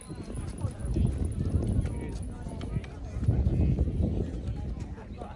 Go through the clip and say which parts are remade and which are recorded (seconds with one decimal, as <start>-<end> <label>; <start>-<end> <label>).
0.0-5.4 recorded